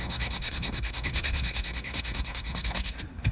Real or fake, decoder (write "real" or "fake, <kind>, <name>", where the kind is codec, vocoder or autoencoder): fake, codec, SNAC